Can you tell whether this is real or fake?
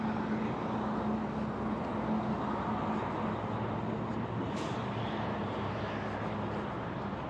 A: real